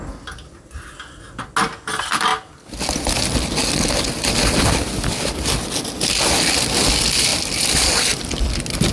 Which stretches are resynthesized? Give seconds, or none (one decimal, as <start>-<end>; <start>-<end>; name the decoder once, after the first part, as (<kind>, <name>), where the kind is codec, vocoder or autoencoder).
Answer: none